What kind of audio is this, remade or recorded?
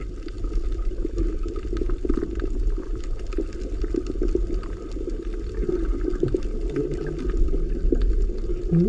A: recorded